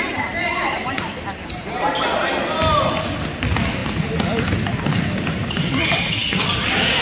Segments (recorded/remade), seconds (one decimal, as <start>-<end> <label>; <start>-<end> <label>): 0.0-7.0 recorded